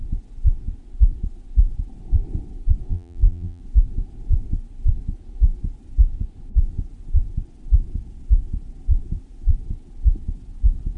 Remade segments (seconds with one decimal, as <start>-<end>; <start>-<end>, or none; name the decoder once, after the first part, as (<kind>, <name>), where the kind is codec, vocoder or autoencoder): 2.9-3.6 (vocoder, BigVGAN v2)